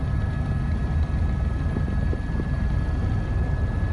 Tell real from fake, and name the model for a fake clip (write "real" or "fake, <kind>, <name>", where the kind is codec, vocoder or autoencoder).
fake, vocoder, BigVGAN v2